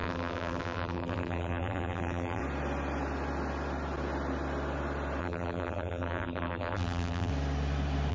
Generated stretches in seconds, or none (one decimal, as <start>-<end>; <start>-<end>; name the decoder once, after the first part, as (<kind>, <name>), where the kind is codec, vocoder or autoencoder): 0.0-2.4 (vocoder, BigVGAN v2); 5.2-7.3